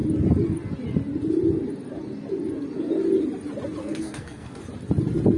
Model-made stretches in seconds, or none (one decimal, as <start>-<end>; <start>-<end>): 3.8-4.6